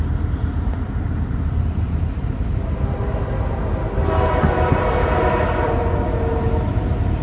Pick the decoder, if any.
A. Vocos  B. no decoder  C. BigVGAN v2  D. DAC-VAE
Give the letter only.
B